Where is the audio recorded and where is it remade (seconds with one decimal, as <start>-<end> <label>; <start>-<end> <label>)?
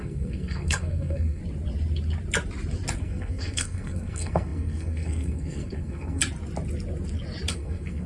0.0-1.4 remade; 1.4-3.0 recorded; 3.0-6.2 remade; 6.2-7.5 recorded; 7.5-8.1 remade